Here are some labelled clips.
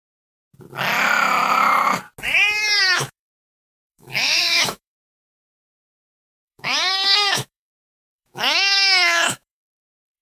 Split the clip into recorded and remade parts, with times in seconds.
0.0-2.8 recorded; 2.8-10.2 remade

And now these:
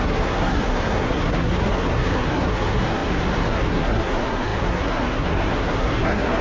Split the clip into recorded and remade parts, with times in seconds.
0.0-6.4 remade

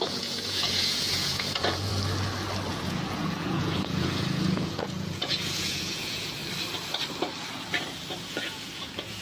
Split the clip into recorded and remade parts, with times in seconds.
0.0-1.9 remade; 1.9-2.7 recorded; 2.7-6.4 remade; 6.4-8.2 recorded; 8.2-9.2 remade

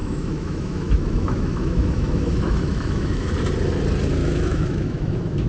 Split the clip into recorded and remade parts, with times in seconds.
0.0-3.3 remade; 3.3-4.2 recorded; 4.2-5.5 remade

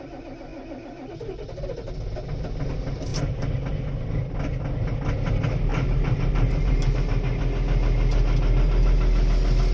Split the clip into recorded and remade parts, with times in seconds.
0.0-3.1 recorded; 3.1-3.7 remade; 3.7-5.7 recorded; 5.7-7.0 remade; 7.0-9.7 recorded

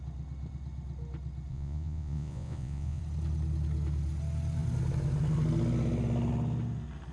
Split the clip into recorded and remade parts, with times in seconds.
0.0-1.5 recorded; 1.5-3.0 remade; 3.0-7.1 recorded

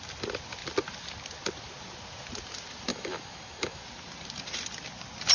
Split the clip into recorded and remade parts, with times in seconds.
0.0-2.9 recorded; 2.9-3.8 remade; 3.8-5.3 recorded